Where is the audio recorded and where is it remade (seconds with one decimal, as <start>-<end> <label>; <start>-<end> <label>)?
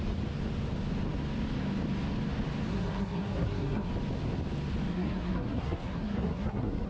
0.0-2.7 recorded; 2.7-3.9 remade; 3.9-4.9 recorded; 4.9-6.9 remade